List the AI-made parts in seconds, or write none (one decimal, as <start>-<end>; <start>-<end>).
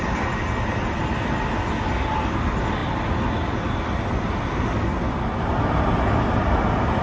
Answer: none